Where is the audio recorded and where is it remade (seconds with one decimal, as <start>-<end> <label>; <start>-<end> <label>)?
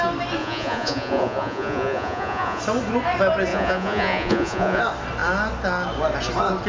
0.0-0.4 recorded; 0.4-2.6 remade; 2.6-3.5 recorded; 3.5-4.8 remade; 4.8-6.7 recorded